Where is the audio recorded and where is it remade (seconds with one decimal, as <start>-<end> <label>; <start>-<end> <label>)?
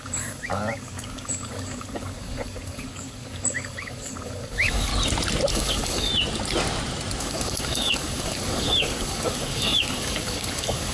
0.0-4.9 remade; 4.9-5.5 recorded; 5.5-6.1 remade; 6.1-7.2 recorded; 7.2-10.9 remade